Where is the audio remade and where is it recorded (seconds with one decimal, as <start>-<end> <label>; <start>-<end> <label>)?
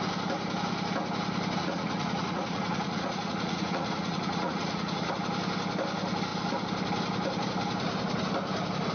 0.0-1.6 recorded; 1.6-5.1 remade; 5.1-8.9 recorded